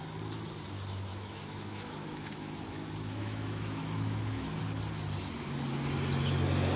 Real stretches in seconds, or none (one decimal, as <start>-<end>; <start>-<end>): 0.0-1.1; 4.6-6.8